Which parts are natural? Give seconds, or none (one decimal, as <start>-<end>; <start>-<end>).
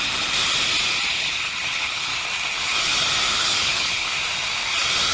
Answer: 0.0-1.1; 2.1-3.3; 4.1-5.1